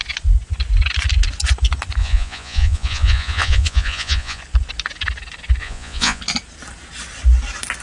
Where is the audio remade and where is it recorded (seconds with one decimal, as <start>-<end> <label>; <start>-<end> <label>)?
0.0-2.0 recorded; 2.0-4.4 remade; 4.4-5.6 recorded; 5.6-6.2 remade; 6.2-7.8 recorded